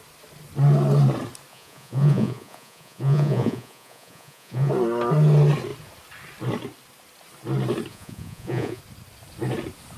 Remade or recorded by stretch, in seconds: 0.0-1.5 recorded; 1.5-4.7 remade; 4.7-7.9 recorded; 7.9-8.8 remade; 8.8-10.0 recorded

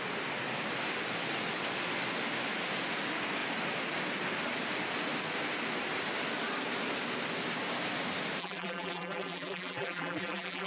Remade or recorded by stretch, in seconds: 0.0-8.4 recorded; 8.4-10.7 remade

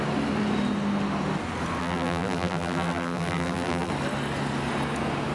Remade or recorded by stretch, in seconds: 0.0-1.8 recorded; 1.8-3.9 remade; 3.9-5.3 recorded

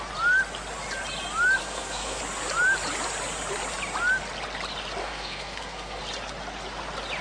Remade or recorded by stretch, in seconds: 0.0-1.6 recorded; 1.6-2.2 remade; 2.2-5.0 recorded; 5.0-6.0 remade; 6.0-7.2 recorded